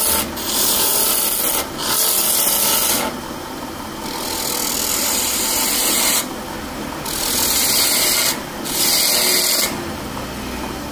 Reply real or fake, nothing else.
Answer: real